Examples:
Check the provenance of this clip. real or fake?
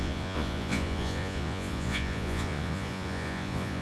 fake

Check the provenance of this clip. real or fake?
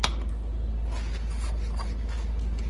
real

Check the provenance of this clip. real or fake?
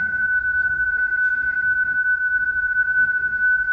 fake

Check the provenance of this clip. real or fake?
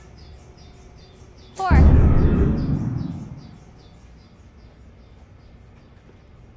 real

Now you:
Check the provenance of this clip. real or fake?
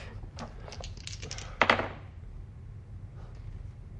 real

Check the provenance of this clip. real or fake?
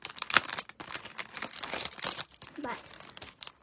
real